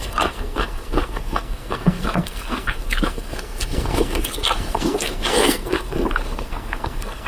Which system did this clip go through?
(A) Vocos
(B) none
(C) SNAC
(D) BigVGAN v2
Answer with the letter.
C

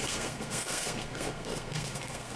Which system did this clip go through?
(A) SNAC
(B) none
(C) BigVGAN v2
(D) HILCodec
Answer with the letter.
A